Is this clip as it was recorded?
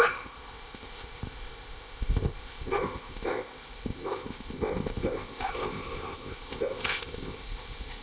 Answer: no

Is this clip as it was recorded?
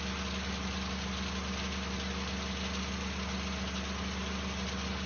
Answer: yes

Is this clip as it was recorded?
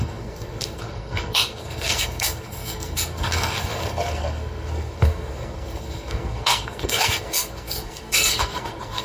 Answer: no